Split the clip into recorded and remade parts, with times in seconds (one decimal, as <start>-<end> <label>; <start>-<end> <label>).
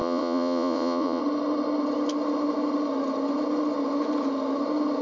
0.0-1.2 remade; 1.2-5.0 recorded